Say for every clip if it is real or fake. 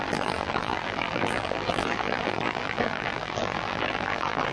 fake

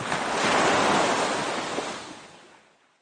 real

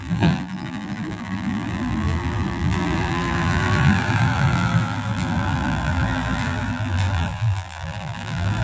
fake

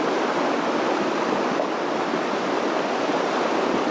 real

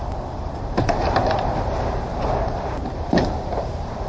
fake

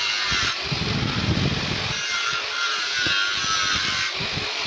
real